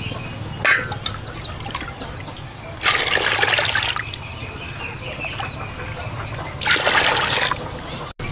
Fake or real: real